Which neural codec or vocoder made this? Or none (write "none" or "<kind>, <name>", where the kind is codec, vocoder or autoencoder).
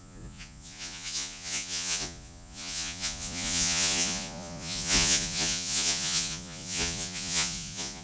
vocoder, Vocos